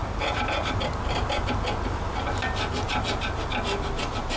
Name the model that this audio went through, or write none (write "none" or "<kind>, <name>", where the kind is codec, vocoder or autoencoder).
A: none